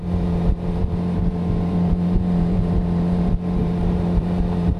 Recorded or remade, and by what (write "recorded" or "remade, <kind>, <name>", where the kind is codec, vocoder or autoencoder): remade, vocoder, BigVGAN v2